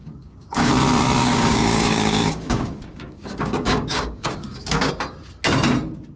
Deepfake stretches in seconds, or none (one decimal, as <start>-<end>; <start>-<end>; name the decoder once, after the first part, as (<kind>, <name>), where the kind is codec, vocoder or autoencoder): 0.0-0.7 (codec, DAC); 1.2-4.9